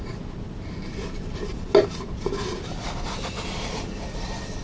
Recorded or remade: recorded